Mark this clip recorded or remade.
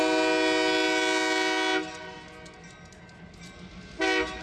recorded